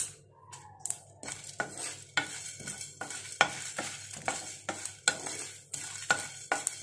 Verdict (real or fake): real